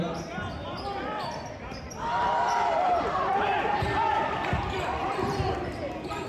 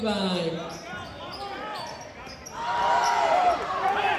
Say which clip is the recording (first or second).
second